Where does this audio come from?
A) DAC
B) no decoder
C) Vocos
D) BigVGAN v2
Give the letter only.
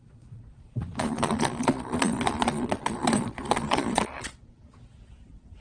C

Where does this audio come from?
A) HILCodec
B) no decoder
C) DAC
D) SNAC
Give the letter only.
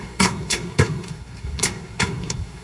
D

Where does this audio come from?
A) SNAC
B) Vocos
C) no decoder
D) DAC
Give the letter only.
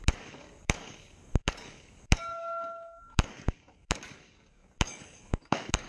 D